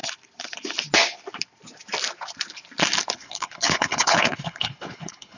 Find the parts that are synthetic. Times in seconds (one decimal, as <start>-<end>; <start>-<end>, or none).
3.2-5.4